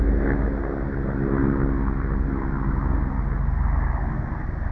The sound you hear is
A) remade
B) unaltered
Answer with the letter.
B